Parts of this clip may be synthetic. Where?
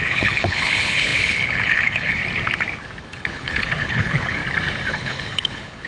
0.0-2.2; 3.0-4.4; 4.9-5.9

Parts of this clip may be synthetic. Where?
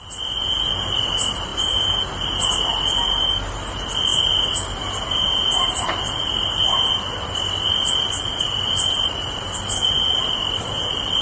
none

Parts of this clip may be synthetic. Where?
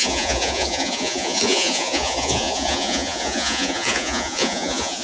0.0-5.0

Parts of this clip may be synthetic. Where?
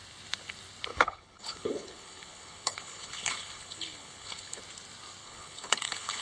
0.9-4.6; 5.2-6.2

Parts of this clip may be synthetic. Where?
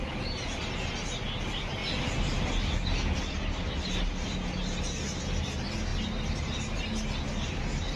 none